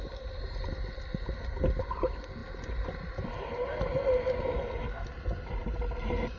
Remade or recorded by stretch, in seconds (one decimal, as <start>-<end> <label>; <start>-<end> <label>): 0.0-6.4 recorded